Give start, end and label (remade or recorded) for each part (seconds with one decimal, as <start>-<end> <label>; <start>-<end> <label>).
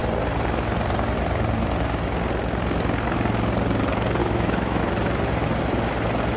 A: 0.0-4.2 recorded; 4.2-4.8 remade; 4.8-6.4 recorded